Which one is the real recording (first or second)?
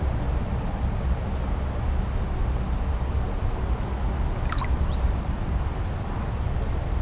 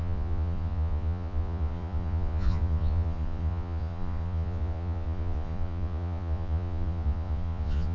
first